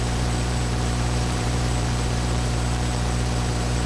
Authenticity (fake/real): fake